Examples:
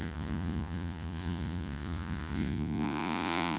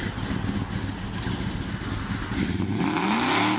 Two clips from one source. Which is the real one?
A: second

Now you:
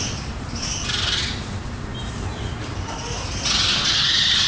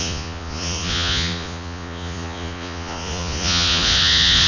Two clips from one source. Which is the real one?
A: first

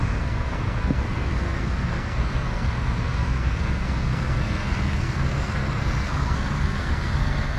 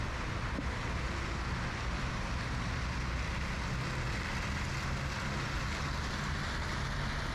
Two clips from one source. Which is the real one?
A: second